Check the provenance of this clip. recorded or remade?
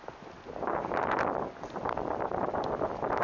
recorded